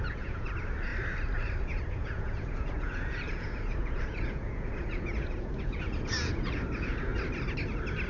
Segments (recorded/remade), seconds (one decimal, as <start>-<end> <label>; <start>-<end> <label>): 0.0-0.9 remade; 0.9-1.6 recorded; 1.6-7.1 remade; 7.1-8.1 recorded